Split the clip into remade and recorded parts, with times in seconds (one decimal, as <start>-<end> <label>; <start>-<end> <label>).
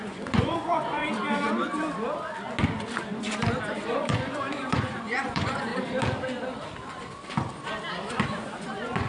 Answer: 0.0-1.0 remade; 1.0-3.7 recorded; 3.7-5.7 remade; 5.7-8.1 recorded; 8.1-9.1 remade